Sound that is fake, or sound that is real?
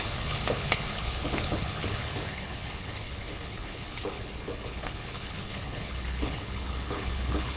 fake